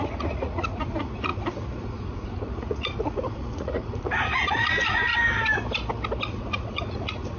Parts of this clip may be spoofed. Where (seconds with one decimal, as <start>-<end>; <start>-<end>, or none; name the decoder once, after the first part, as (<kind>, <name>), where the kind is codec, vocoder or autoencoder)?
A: 0.0-5.1 (vocoder, Vocos); 6.4-7.4